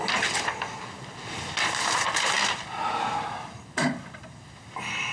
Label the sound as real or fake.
real